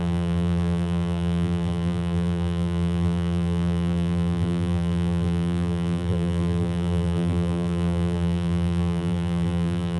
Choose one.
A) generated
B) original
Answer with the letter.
A